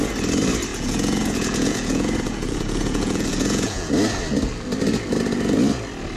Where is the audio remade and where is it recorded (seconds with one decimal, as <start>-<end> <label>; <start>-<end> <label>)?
0.0-0.7 recorded; 0.7-3.9 remade; 3.9-6.2 recorded